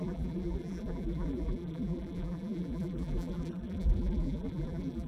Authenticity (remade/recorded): remade